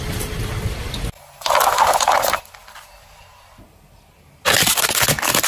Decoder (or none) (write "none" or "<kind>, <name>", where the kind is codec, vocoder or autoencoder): none